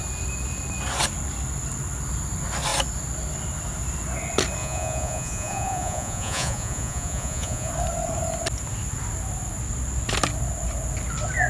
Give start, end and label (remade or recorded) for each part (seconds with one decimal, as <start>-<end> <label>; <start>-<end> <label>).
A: 0.0-4.6 recorded; 4.6-7.7 remade; 7.7-11.5 recorded